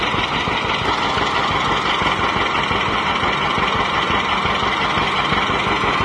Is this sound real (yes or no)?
yes